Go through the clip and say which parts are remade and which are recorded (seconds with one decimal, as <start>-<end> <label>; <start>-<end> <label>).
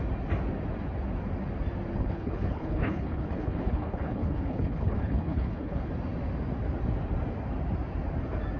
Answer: 0.0-2.0 recorded; 2.0-5.9 remade; 5.9-8.6 recorded